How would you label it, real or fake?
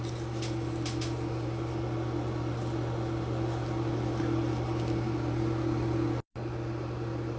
real